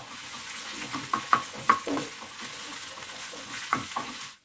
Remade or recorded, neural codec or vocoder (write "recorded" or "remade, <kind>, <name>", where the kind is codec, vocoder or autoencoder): remade, vocoder, Vocos